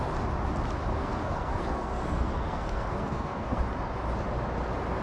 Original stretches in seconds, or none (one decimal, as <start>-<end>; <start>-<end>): 0.0-0.9; 3.6-5.0